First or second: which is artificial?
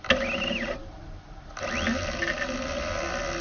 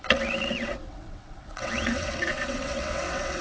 second